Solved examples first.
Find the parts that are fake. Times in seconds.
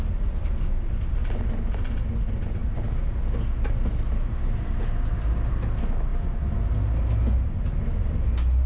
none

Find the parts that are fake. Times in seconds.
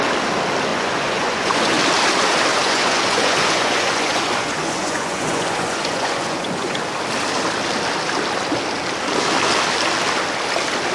0.7-1.8 (vocoder, Vocos); 2.5-6.8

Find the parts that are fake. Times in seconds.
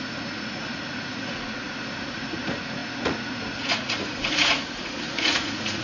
0.0-5.8 (vocoder, Vocos)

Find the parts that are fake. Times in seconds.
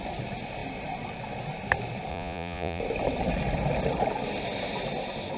2.1-2.8 (vocoder, Vocos)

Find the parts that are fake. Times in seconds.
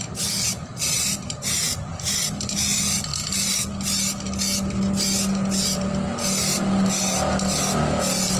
none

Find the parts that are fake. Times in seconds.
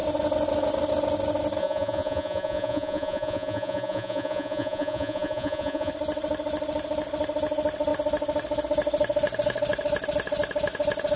1.6-5.9 (vocoder, Vocos)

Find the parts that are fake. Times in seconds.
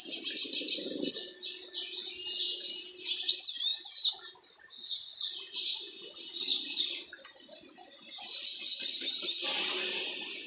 none